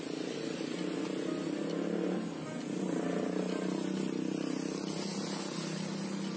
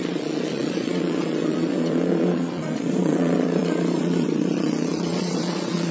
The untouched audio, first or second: first